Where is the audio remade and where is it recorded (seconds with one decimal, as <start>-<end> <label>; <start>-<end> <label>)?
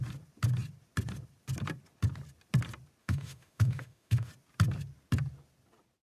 0.0-3.0 recorded; 3.0-4.3 remade; 4.3-6.1 recorded